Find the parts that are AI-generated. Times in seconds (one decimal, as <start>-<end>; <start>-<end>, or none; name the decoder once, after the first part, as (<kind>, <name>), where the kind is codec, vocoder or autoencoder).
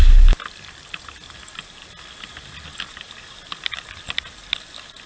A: none